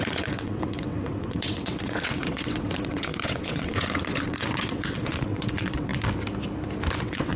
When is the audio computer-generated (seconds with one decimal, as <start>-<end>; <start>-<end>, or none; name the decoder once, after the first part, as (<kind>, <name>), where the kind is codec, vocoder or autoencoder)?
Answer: 0.0-5.9 (vocoder, WaveNeXt); 7.0-7.4